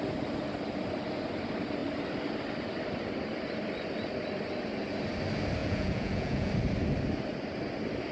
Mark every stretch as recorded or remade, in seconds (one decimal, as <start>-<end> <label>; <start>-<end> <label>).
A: 0.0-5.6 recorded; 5.6-6.5 remade; 6.5-8.1 recorded